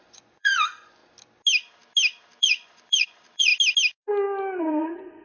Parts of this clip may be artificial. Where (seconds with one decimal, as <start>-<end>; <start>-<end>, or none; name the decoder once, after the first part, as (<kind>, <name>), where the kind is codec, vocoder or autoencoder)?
0.0-1.0 (vocoder, Vocos); 2.4-3.5; 4.6-5.2